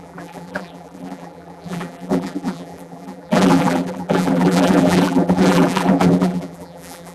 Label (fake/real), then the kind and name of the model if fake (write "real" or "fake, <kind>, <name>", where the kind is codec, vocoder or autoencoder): fake, vocoder, BigVGAN v2